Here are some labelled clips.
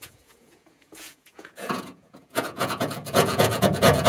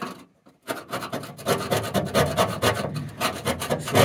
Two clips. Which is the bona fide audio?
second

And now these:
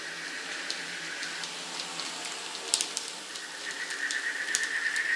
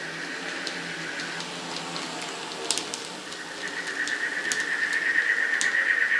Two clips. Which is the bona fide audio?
second